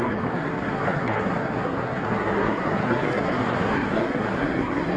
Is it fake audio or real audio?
fake